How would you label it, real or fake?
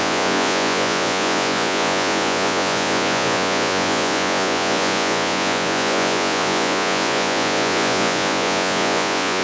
fake